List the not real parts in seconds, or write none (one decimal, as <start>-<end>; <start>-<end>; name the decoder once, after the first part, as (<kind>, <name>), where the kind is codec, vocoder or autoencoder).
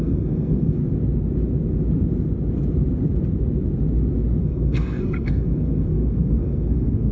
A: 0.0-0.8 (codec, SNAC); 4.4-7.1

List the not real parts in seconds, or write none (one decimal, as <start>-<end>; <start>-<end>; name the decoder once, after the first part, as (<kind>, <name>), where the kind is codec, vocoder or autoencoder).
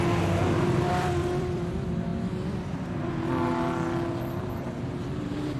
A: 0.4-1.7 (vocoder, BigVGAN v2)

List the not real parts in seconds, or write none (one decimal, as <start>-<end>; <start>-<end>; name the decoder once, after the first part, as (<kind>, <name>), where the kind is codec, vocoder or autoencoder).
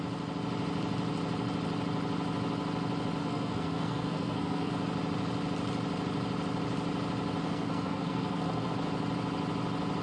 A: 3.2-4.7 (codec, SNAC); 7.4-8.7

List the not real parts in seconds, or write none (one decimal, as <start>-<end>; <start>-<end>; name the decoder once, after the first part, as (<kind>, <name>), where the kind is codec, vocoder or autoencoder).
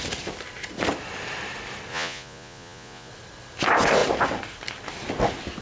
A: 1.9-3.1 (vocoder, Vocos)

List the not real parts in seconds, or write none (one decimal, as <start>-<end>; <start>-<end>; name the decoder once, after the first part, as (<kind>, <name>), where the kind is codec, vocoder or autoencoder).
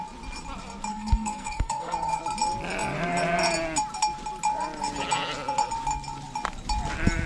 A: 0.9-2.2 (codec, SNAC)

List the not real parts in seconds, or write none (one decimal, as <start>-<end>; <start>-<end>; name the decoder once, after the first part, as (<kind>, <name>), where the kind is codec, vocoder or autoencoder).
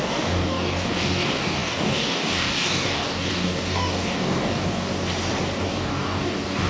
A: 0.0-4.9 (codec, DAC); 5.6-6.7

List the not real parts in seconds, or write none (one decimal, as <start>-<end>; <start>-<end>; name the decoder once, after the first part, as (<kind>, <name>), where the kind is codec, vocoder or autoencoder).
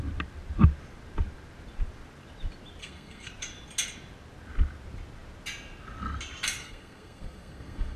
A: 2.8-3.3 (codec, SNAC); 6.6-8.0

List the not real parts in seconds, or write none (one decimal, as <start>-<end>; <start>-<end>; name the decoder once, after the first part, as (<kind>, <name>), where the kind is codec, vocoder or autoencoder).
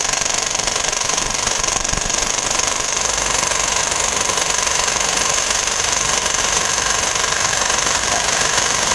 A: 0.0-8.9 (autoencoder, DAC-VAE)